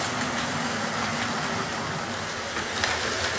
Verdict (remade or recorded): recorded